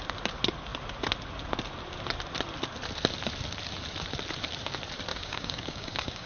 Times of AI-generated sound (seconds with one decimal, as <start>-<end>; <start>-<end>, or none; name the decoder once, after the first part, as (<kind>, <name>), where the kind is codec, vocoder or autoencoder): 5.1-6.3 (codec, DAC)